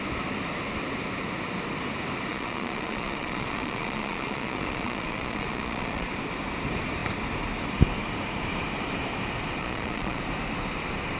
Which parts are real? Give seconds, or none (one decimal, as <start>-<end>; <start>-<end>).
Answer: 0.0-2.3; 6.1-9.6; 10.2-11.2